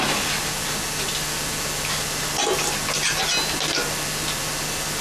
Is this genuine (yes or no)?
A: yes